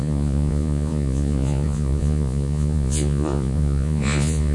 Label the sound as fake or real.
fake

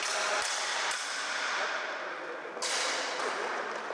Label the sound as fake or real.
real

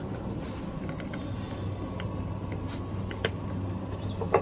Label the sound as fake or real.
real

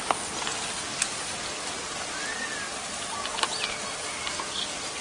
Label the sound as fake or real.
real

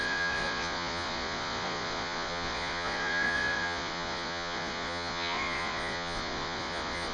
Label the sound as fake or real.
fake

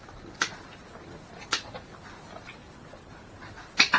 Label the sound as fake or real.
real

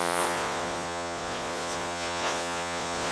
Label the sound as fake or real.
fake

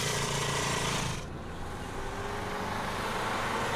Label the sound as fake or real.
real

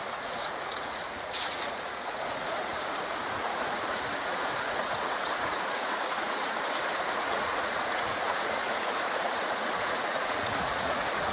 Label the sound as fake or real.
fake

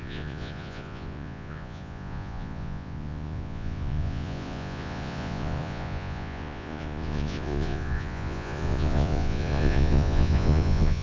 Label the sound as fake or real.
fake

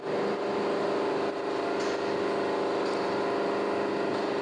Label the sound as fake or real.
real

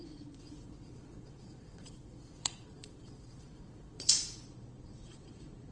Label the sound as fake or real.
fake